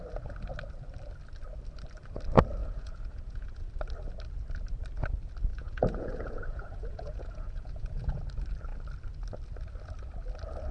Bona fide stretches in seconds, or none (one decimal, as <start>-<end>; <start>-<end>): 0.0-2.6; 3.7-5.5; 8.2-10.7